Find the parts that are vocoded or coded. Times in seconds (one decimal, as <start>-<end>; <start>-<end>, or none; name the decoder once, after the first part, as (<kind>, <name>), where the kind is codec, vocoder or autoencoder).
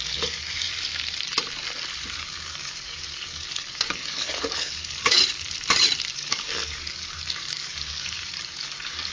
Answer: 0.0-0.7 (codec, DAC); 2.0-5.2; 6.1-9.1